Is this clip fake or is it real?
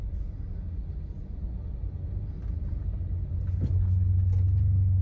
real